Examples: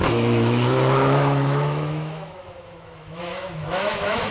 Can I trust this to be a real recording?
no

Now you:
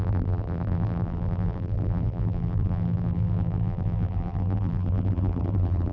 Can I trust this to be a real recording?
no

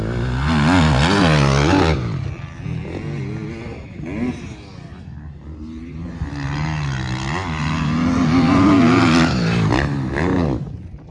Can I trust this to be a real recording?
yes